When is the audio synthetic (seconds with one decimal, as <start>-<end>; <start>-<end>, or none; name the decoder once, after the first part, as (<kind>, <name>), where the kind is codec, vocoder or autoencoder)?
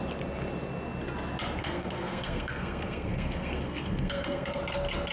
1.6-4.6 (codec, SNAC)